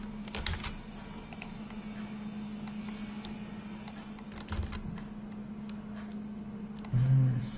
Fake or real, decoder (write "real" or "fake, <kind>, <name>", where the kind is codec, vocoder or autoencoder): real